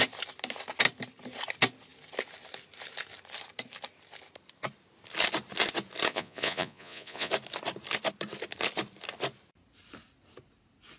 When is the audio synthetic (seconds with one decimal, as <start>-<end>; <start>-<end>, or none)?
6.1-7.3